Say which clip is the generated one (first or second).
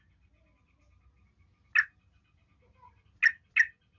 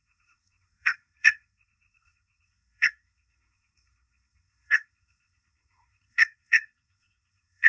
second